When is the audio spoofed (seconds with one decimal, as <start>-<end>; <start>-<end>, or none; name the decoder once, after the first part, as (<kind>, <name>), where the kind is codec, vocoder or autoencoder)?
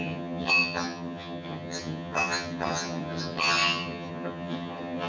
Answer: 0.0-5.1 (vocoder, HiFi-GAN)